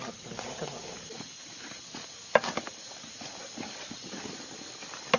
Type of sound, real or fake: real